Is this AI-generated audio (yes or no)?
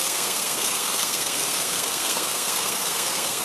yes